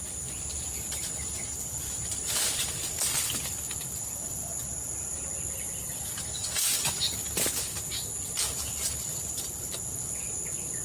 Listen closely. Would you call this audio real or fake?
real